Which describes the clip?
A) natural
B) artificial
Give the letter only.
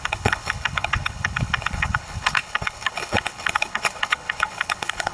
B